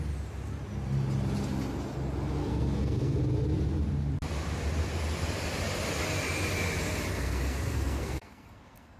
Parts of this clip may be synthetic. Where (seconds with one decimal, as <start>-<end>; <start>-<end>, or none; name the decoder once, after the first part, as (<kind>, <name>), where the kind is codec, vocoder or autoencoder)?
2.4-3.2 (codec, SNAC); 7.1-9.0